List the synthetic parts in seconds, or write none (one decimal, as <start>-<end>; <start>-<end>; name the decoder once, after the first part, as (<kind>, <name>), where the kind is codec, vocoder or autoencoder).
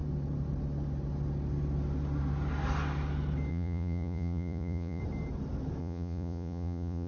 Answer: 3.5-5.0 (vocoder, Vocos); 5.8-7.1